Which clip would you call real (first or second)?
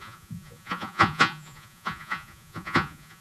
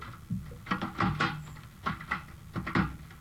second